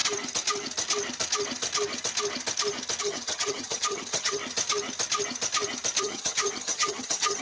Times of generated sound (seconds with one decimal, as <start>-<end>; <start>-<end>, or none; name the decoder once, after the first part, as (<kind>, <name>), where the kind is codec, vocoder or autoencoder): 3.0-4.4 (vocoder, HiFi-GAN); 6.0-7.4